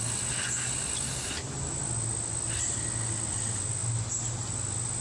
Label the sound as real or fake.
real